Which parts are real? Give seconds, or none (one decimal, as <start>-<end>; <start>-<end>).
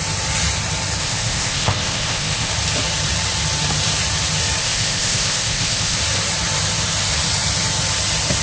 0.0-1.0; 2.5-4.6; 6.0-8.4